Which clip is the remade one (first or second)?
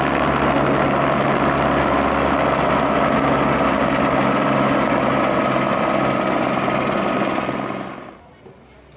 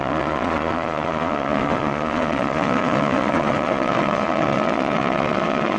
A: second